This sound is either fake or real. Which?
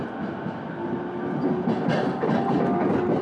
real